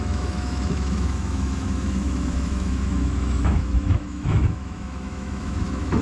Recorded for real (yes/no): no